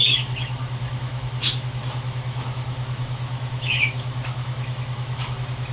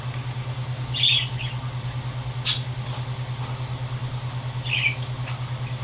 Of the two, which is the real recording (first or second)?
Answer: second